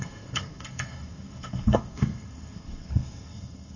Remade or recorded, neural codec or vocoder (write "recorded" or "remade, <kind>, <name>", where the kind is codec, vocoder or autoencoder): remade, codec, SNAC